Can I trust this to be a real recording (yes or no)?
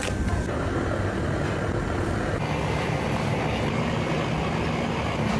yes